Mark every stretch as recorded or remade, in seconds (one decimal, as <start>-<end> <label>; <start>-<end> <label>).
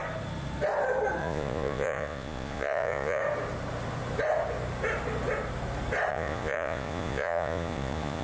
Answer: 0.0-1.2 recorded; 1.2-3.2 remade; 3.2-6.1 recorded; 6.1-8.2 remade